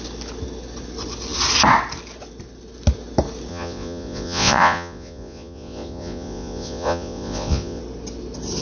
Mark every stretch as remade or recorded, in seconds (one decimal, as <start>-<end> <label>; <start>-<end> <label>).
0.0-3.5 recorded; 3.5-7.8 remade; 7.8-8.6 recorded